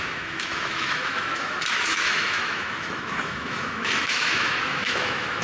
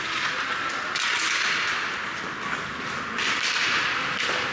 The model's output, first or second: first